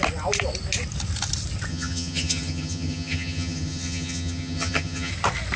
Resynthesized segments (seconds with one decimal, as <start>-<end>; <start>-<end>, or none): 1.7-5.1